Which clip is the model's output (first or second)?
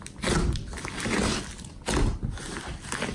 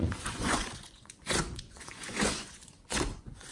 second